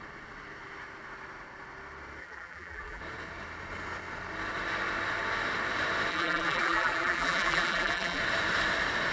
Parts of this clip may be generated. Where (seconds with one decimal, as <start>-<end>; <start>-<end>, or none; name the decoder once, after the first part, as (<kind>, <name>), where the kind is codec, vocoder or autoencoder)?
2.2-3.0 (vocoder, BigVGAN v2); 6.1-8.2